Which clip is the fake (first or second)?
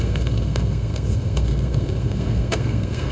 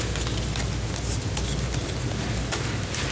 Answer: first